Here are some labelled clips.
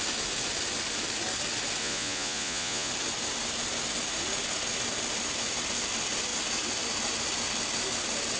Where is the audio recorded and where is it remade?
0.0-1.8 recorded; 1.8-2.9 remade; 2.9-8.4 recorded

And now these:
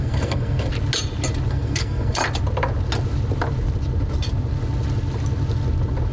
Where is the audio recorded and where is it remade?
0.0-0.7 remade; 0.7-1.5 recorded; 1.5-2.2 remade; 2.2-6.1 recorded

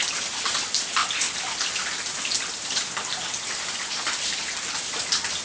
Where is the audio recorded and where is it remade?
0.0-5.4 recorded

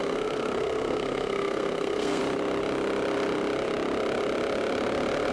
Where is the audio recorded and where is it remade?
0.0-2.2 remade; 2.2-5.3 recorded

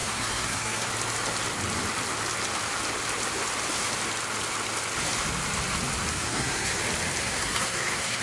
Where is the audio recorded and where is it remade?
0.0-0.9 remade; 0.9-6.1 recorded; 6.1-6.8 remade; 6.8-7.2 recorded; 7.2-8.2 remade